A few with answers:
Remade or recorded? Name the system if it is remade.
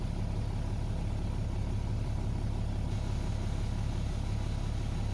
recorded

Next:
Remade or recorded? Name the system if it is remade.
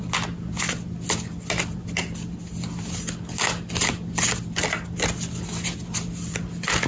recorded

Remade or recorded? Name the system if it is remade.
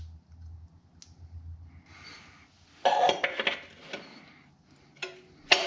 recorded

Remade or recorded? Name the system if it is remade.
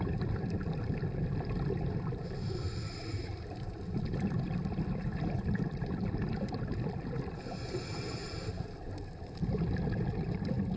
remade, vocoder, BigVGAN v2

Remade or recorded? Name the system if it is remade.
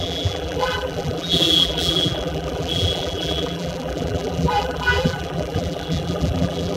remade, vocoder, BigVGAN v2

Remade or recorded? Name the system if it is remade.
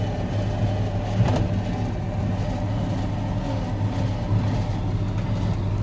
recorded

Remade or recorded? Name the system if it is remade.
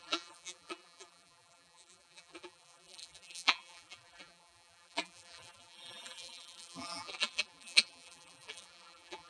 remade, vocoder, BigVGAN v2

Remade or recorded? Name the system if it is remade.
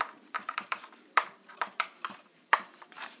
remade, vocoder, BigVGAN v2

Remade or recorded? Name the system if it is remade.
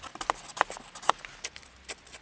recorded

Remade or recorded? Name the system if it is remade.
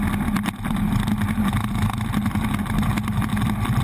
recorded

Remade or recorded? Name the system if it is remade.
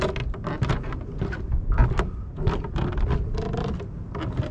recorded